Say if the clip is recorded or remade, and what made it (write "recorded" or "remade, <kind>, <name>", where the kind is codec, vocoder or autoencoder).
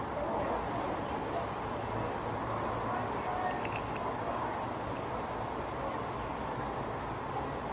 recorded